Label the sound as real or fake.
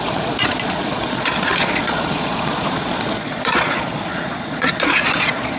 fake